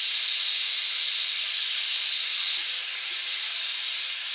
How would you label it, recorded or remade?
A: recorded